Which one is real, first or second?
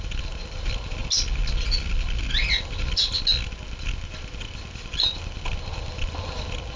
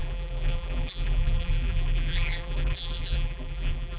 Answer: first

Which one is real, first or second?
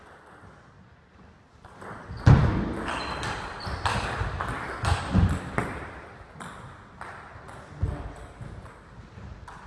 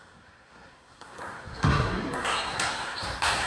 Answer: first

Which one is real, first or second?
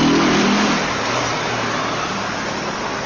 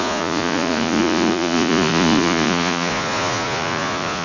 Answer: first